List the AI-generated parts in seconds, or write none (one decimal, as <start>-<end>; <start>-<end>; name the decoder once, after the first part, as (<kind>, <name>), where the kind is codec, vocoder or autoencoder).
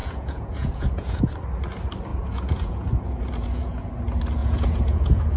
0.0-1.2 (vocoder, Vocos); 2.1-3.9; 4.4-5.4